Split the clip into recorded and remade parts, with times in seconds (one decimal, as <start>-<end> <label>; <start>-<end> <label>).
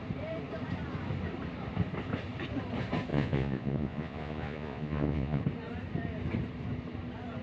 0.0-3.1 recorded; 3.1-5.4 remade; 5.4-7.4 recorded